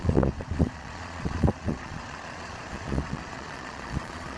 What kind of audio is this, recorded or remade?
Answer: remade